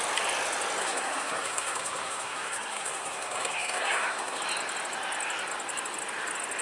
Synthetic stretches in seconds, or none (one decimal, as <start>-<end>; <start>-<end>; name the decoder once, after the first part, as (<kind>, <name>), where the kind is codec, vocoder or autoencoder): 0.8-4.4 (codec, SNAC)